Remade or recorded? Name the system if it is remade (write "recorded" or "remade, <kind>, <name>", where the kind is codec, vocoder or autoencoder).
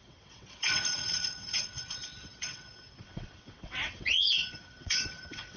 remade, vocoder, WaveNeXt